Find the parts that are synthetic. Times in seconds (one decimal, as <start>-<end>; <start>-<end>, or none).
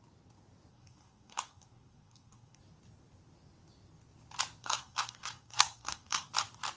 0.7-2.6; 4.6-6.3